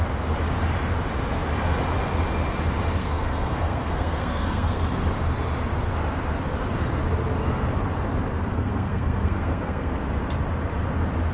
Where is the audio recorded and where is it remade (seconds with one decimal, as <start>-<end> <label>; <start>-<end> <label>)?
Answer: 0.0-3.0 recorded; 3.0-4.8 remade; 4.8-8.5 recorded; 8.5-9.9 remade; 9.9-11.3 recorded